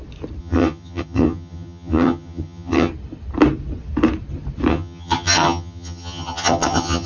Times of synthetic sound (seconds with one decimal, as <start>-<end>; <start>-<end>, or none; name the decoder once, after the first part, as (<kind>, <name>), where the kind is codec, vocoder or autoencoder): 0.4-2.9 (vocoder, HiFi-GAN); 4.7-7.1

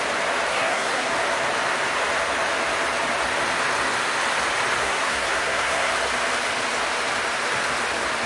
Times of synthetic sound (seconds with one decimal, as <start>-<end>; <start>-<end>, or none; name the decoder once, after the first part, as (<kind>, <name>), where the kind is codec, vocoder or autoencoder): 0.5-1.1 (codec, SNAC); 4.8-5.9

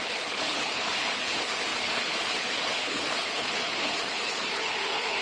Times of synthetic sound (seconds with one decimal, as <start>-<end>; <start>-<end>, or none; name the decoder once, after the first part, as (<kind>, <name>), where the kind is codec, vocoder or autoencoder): 0.0-5.2 (codec, HILCodec)

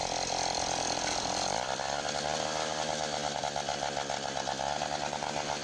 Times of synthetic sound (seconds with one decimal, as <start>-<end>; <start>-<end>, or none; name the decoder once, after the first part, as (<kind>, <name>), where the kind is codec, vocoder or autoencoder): none

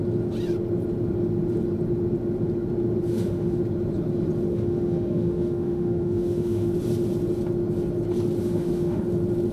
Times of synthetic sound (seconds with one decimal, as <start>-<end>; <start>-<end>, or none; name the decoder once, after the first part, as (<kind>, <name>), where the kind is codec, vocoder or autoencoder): 3.1-3.6 (autoencoder, DAC-VAE); 4.5-6.7; 8.4-9.0

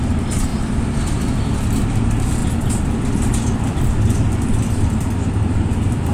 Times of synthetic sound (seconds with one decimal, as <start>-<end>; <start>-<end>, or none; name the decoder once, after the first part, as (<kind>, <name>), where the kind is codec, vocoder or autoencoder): 0.0-0.5 (vocoder, BigVGAN v2); 2.0-2.4; 4.7-6.1

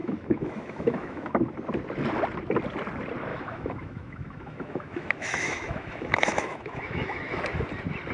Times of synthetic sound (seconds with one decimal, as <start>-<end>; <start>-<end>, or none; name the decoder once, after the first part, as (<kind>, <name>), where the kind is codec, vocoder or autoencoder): 0.0-1.3 (autoencoder, DAC-VAE); 3.3-7.4